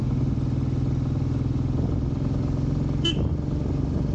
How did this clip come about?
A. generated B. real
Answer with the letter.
B